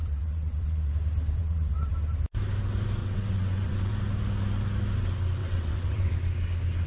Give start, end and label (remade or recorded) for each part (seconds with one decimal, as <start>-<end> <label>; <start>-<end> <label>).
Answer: 0.0-0.9 remade; 0.9-1.4 recorded; 1.4-1.9 remade; 1.9-3.0 recorded; 3.0-3.9 remade; 3.9-5.4 recorded; 5.4-6.1 remade; 6.1-6.9 recorded